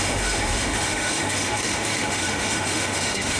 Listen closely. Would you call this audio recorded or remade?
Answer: remade